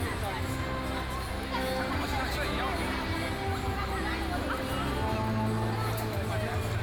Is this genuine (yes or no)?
yes